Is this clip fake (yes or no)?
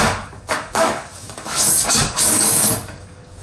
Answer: yes